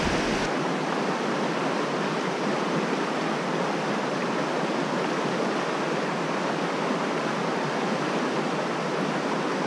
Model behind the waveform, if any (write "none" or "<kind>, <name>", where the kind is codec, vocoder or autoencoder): none